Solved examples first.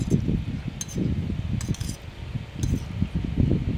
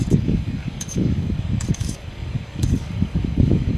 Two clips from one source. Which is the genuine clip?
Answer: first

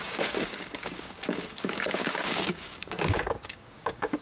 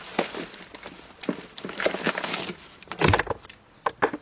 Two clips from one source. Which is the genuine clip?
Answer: second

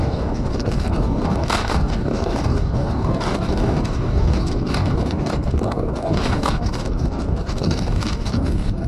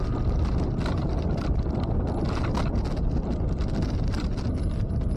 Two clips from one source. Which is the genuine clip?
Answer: second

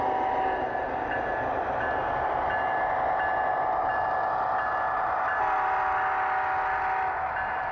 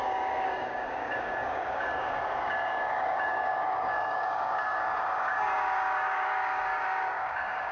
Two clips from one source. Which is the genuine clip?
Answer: first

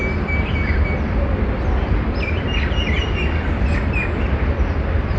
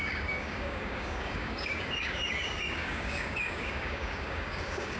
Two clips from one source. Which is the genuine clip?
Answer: first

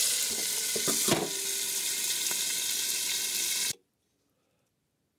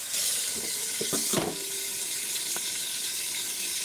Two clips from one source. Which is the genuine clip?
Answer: first